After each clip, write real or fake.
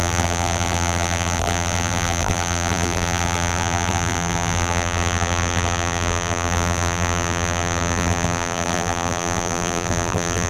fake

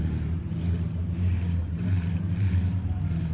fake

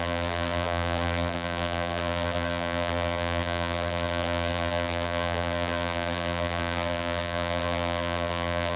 fake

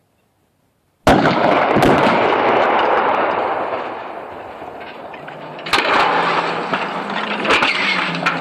real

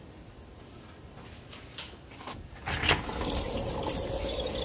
real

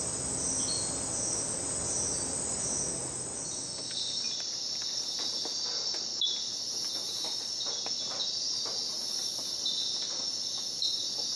real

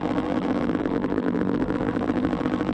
fake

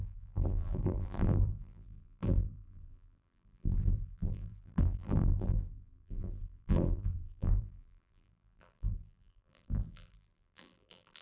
fake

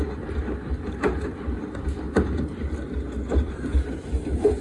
real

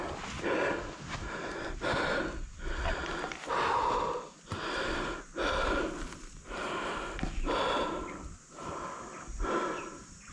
real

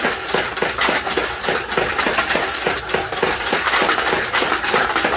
fake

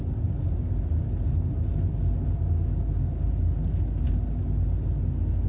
real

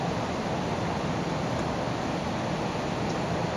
real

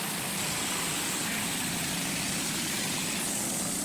real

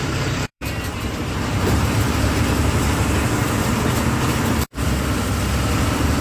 fake